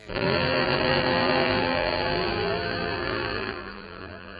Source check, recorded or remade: remade